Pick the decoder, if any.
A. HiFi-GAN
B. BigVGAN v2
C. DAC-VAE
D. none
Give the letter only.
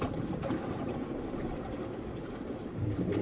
B